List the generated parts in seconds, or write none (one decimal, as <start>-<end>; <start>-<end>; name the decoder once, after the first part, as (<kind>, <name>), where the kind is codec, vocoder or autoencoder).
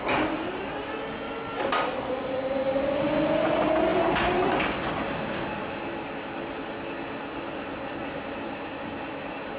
none